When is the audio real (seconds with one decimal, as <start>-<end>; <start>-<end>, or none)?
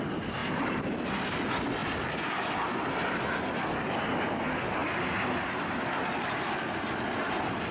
0.0-7.7